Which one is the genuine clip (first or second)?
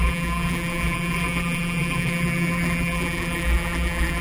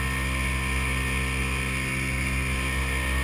second